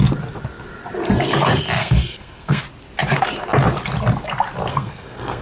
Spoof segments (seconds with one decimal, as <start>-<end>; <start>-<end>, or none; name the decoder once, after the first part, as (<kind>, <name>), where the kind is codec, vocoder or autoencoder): 1.8-2.6 (codec, SNAC); 4.7-5.4